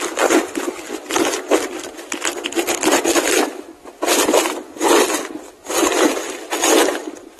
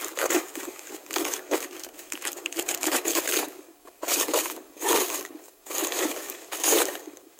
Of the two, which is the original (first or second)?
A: first